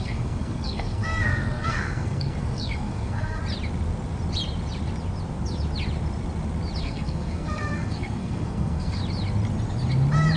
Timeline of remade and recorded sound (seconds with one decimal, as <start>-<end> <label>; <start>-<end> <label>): 0.0-3.4 remade; 3.4-6.8 recorded; 6.8-9.0 remade; 9.0-10.4 recorded

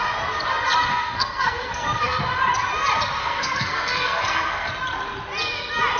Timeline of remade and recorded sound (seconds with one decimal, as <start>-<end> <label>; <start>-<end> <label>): 0.0-0.9 recorded; 0.9-2.2 remade; 2.2-3.2 recorded; 3.2-4.7 remade; 4.7-6.0 recorded

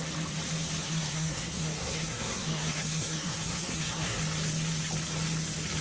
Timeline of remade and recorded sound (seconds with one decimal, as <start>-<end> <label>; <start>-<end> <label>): 0.0-0.8 recorded; 0.8-4.2 remade; 4.2-5.8 recorded

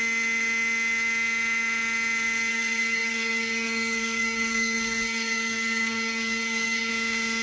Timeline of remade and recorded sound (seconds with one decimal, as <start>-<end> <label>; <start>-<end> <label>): 0.0-2.5 recorded; 2.5-6.9 remade; 6.9-7.4 recorded